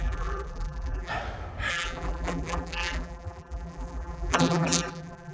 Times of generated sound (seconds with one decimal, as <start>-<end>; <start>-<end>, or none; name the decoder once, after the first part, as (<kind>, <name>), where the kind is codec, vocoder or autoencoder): 0.0-1.1 (vocoder, BigVGAN v2); 1.7-5.3

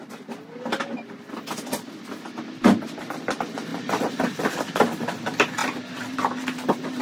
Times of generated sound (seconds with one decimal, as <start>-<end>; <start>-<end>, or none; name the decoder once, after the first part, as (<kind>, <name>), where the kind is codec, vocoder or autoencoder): none